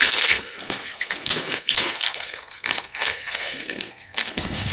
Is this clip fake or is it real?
fake